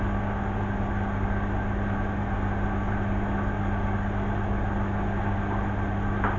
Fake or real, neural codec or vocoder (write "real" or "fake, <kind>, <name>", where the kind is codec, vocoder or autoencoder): real